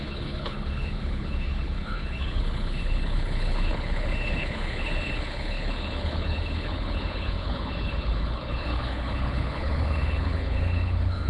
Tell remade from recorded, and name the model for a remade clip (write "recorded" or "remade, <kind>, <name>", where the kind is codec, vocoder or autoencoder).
remade, codec, HILCodec